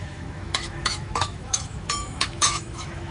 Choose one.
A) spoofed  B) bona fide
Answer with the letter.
A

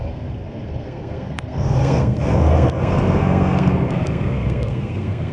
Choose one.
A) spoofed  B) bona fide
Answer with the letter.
A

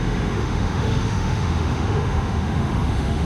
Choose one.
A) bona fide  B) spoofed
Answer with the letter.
B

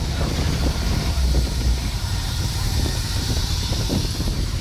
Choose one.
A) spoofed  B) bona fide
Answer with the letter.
A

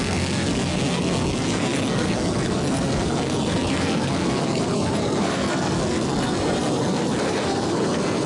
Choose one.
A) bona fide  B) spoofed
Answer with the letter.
B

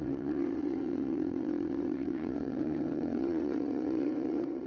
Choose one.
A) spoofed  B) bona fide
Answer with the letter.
A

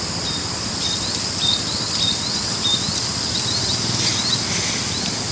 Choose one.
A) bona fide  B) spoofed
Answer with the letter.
A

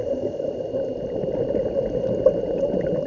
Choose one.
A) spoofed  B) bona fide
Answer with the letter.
B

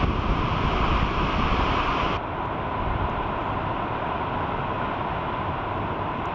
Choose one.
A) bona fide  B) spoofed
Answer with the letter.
A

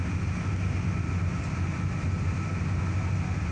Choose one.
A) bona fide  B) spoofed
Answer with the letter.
A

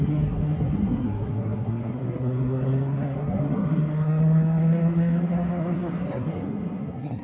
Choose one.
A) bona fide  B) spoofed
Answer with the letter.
B